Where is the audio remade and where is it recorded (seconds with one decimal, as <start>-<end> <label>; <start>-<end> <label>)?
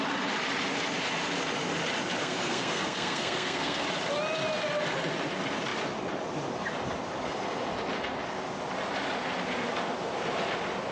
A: 0.0-2.2 recorded; 2.2-3.8 remade; 3.8-10.9 recorded